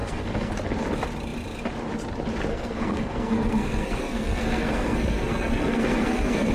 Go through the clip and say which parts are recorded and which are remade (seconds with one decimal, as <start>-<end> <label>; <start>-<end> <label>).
0.0-0.5 remade; 0.5-2.5 recorded; 2.5-6.5 remade